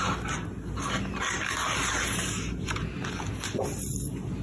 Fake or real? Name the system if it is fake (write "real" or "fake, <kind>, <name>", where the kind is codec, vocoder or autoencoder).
real